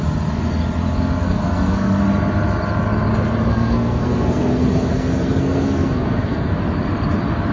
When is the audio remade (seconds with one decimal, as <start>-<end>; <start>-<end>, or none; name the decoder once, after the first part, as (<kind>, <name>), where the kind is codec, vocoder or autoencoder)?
1.2-2.0 (codec, SNAC); 3.5-6.6